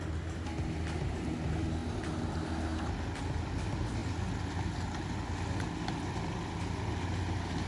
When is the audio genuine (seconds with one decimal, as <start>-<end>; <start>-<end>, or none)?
0.0-7.7